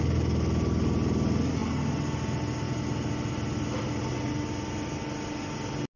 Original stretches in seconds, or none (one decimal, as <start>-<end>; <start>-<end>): 0.0-6.0